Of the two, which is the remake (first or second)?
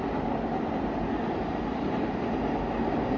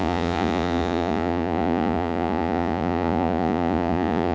second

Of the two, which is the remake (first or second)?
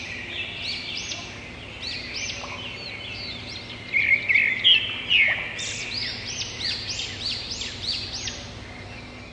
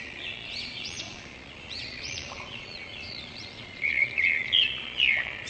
second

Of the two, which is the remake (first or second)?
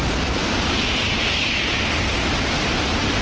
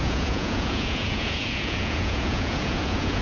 second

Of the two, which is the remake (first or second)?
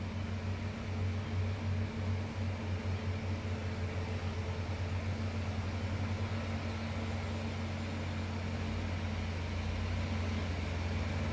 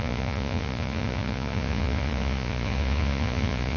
second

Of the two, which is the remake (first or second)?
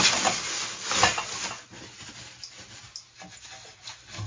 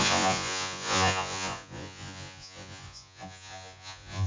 second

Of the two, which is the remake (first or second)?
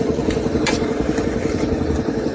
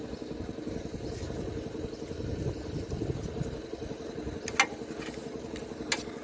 first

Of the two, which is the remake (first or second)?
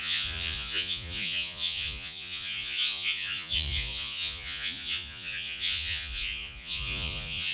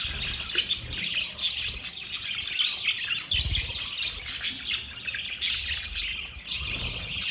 first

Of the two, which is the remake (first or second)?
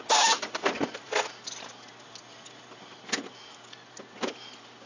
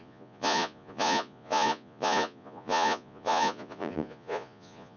second